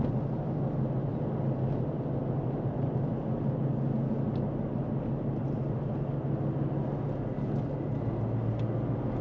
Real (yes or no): yes